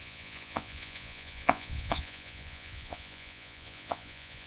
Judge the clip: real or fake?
fake